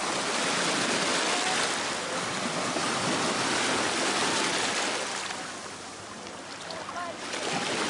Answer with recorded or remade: recorded